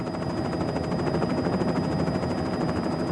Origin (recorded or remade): recorded